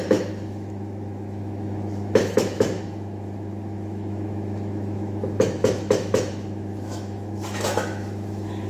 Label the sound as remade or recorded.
remade